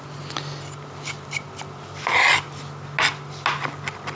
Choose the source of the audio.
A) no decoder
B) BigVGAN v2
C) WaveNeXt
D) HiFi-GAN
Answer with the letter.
A